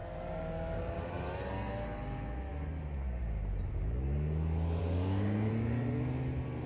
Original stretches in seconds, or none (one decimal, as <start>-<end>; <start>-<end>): 1.0-4.8; 5.5-6.7